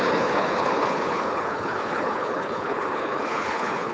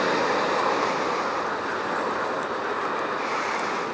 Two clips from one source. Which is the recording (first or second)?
second